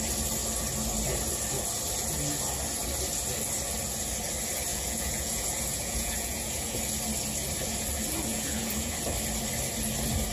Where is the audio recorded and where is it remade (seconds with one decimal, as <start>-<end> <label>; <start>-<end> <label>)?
0.0-4.7 recorded; 4.7-6.8 remade; 6.8-8.3 recorded; 8.3-9.0 remade; 9.0-10.3 recorded